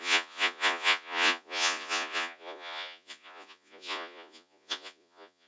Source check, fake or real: fake